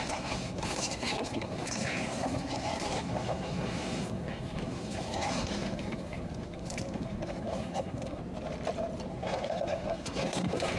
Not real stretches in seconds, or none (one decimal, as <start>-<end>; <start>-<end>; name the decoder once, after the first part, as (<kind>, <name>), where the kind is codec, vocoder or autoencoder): 0.0-8.2 (codec, SNAC); 9.1-10.8